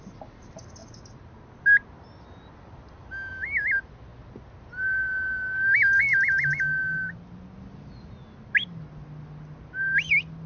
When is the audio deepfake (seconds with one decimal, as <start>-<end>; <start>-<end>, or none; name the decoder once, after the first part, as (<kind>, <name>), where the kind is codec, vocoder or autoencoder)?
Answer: none